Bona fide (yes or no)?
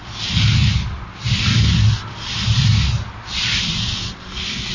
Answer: yes